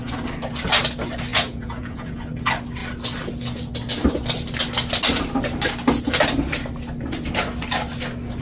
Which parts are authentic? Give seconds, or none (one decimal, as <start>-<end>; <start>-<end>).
0.0-1.3; 2.2-8.4

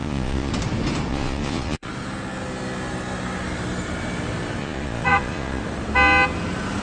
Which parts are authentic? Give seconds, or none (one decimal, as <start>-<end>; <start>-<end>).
0.5-1.1; 1.9-4.6; 5.6-6.8

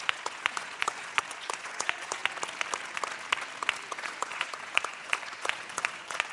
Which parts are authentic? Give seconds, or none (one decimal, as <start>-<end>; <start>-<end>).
2.2-3.9